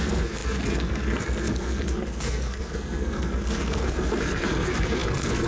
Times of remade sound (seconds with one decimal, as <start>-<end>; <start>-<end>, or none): 0.0-5.5